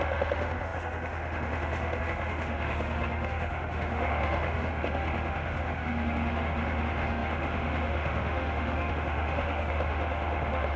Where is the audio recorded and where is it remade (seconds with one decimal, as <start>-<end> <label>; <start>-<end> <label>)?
0.0-10.8 remade